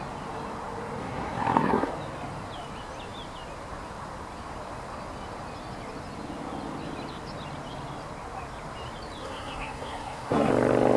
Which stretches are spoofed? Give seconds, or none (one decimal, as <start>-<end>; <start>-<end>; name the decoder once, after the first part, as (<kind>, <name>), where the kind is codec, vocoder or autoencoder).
1.0-1.9 (codec, SNAC); 9.2-10.5